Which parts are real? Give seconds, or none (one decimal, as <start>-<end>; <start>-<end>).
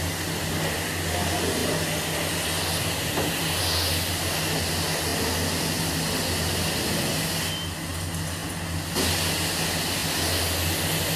0.0-11.2